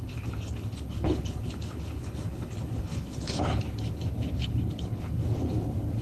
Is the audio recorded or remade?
remade